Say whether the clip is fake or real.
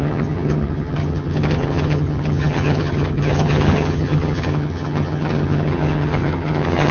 fake